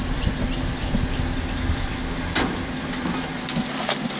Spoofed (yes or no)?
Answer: no